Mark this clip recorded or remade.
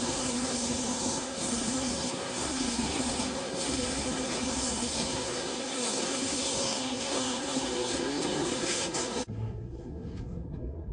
remade